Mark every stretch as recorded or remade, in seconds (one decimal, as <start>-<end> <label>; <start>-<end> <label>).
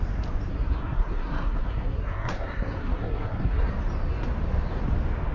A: 0.0-0.5 recorded; 0.5-3.7 remade; 3.7-5.3 recorded